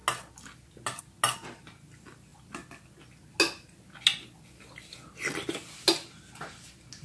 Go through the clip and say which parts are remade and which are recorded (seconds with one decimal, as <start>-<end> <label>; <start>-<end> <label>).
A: 0.0-7.0 recorded